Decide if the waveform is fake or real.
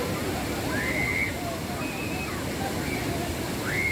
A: real